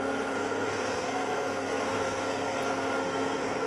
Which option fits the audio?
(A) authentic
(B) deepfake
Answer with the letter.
B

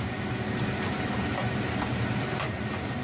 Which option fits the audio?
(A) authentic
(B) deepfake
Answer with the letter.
B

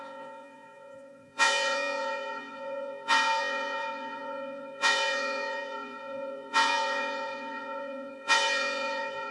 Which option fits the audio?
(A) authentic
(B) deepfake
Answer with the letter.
B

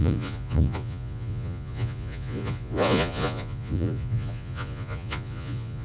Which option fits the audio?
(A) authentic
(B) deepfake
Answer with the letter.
B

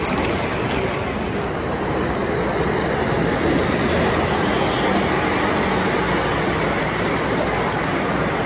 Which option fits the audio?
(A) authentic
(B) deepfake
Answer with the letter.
A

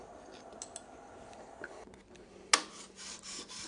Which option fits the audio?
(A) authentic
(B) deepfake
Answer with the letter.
A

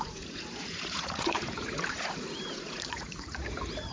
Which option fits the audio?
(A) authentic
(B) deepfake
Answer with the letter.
B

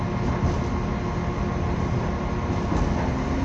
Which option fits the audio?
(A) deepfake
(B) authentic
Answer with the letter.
B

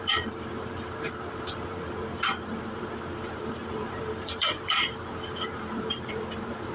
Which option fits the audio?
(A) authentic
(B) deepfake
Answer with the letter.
B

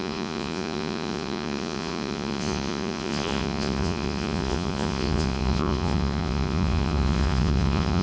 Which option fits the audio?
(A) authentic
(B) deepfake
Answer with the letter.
B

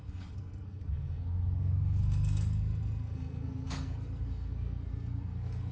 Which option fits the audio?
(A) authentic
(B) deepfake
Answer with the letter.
B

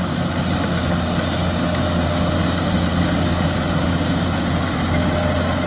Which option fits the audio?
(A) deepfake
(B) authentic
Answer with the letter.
B